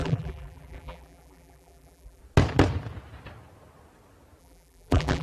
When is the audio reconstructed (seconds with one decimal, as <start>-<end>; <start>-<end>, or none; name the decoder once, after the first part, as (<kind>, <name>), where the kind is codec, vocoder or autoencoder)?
0.0-2.2 (vocoder, BigVGAN v2); 4.4-5.2